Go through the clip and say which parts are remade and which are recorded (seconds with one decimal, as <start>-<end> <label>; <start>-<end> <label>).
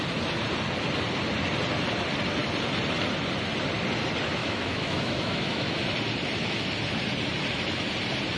0.0-4.4 recorded; 4.4-5.8 remade; 5.8-8.4 recorded